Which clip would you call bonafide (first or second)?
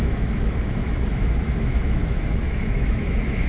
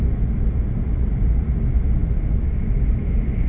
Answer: second